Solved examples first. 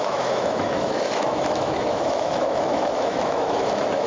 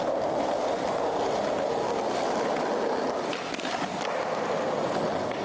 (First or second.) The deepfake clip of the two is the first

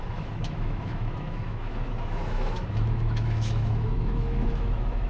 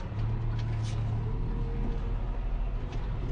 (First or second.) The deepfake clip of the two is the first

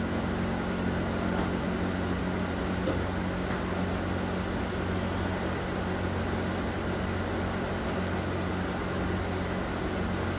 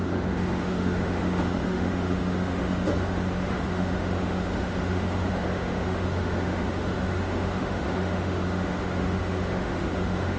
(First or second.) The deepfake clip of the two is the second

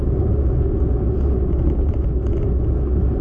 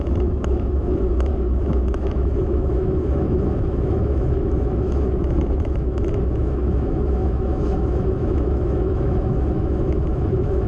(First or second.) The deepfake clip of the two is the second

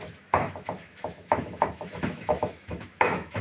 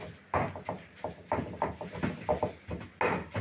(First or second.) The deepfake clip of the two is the first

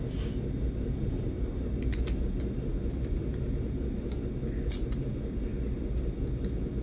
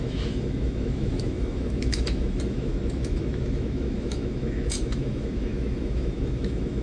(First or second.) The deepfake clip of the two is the second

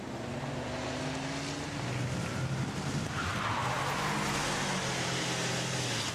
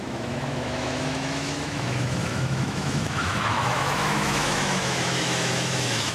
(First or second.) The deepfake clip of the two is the second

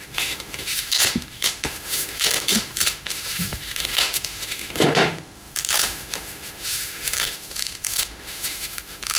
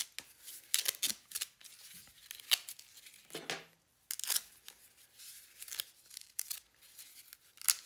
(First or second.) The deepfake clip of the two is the first